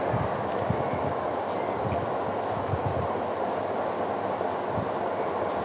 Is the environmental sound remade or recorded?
recorded